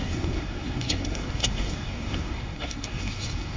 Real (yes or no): no